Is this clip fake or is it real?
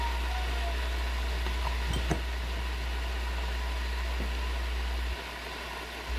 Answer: real